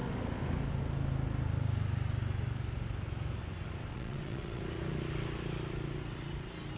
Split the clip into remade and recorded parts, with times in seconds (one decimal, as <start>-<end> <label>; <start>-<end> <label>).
0.0-3.9 recorded; 3.9-4.6 remade; 4.6-6.8 recorded